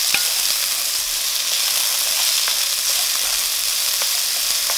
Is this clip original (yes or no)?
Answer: yes